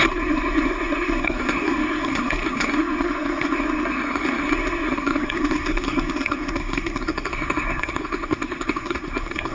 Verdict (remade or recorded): remade